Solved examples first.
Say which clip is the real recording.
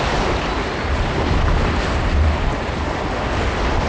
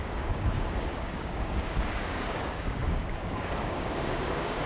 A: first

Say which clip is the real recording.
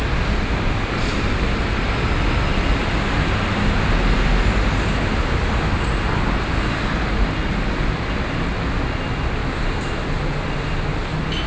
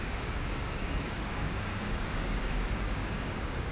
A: first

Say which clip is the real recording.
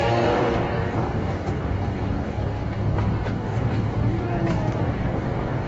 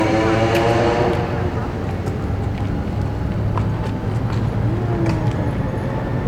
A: second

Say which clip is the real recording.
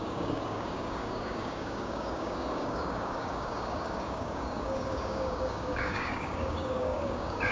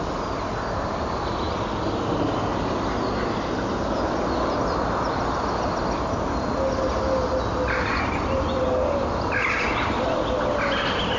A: second